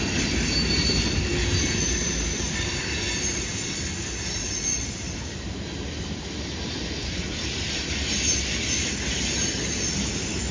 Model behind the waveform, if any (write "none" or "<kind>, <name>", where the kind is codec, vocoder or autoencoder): none